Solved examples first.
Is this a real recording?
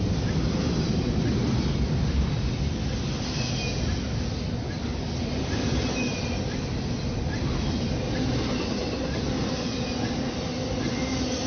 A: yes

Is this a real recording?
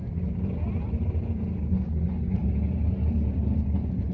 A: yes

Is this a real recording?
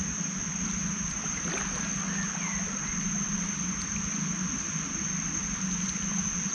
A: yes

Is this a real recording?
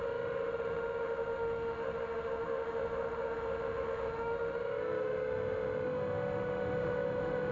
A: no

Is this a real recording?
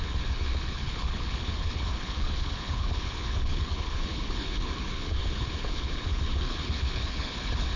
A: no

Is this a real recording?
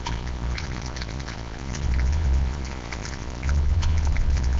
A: no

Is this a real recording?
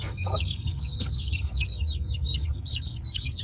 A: no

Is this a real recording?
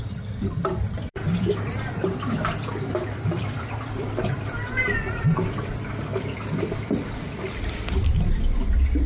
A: no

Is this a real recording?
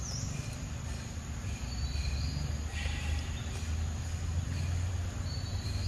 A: yes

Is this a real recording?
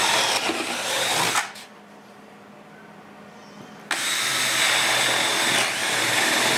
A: yes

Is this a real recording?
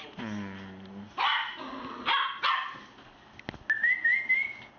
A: yes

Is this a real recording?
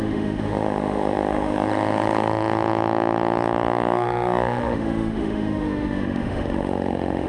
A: no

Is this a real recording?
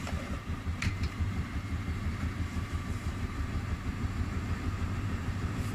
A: no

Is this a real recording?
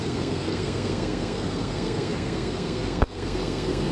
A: no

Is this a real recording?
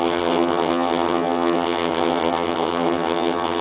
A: no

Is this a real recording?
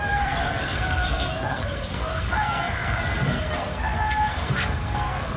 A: no